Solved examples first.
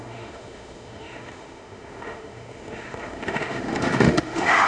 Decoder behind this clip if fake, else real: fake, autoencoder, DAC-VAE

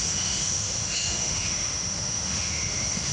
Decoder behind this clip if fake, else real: fake, autoencoder, DAC-VAE